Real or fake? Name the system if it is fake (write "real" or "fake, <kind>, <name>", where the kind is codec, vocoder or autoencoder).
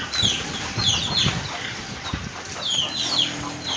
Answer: real